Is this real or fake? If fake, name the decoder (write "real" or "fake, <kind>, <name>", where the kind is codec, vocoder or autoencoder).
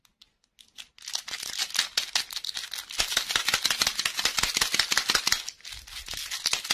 real